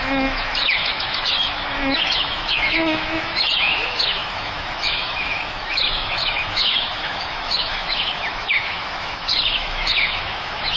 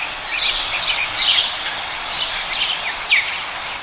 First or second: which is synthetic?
first